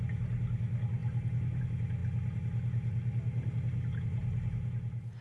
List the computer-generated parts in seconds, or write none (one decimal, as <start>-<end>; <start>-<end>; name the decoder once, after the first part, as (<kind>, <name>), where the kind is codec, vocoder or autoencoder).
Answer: none